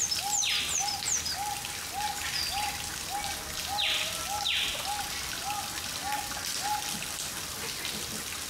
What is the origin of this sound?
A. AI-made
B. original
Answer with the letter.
B